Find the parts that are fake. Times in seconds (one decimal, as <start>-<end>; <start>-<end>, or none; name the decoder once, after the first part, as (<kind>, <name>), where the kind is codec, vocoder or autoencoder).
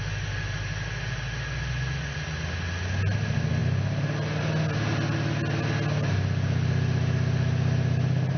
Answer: none